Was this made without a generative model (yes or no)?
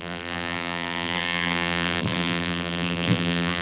no